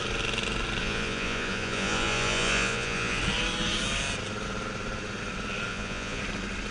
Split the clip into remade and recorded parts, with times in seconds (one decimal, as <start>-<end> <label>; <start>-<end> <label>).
0.0-0.8 recorded; 0.8-3.2 remade; 3.2-5.7 recorded; 5.7-6.2 remade; 6.2-6.7 recorded

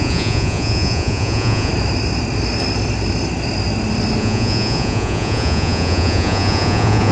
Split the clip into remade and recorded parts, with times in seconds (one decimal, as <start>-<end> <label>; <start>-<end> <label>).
0.0-1.7 remade; 1.7-4.2 recorded; 4.2-7.1 remade

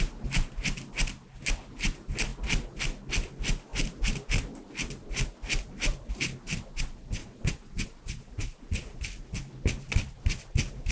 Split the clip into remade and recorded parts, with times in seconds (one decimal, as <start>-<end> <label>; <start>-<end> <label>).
0.0-7.2 recorded; 7.2-9.0 remade; 9.0-10.9 recorded

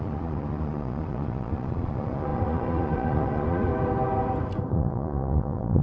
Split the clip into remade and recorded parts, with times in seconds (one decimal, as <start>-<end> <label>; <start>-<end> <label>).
0.0-3.7 remade; 3.7-4.7 recorded; 4.7-5.8 remade

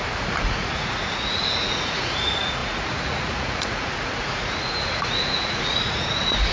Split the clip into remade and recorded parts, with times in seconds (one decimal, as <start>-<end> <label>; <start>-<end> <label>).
0.0-6.5 remade

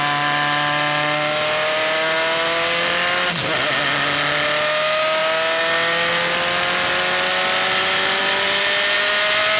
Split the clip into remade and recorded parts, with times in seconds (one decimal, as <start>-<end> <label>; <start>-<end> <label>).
0.0-9.6 recorded